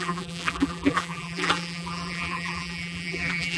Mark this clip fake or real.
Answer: fake